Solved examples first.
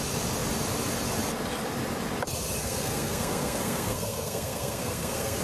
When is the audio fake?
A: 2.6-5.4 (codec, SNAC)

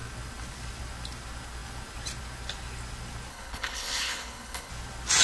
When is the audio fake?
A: 3.3-4.7 (codec, HILCodec)